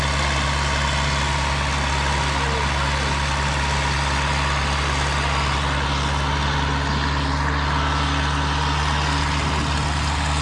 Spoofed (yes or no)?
no